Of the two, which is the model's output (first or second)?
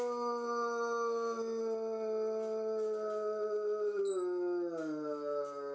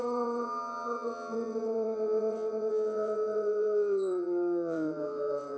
second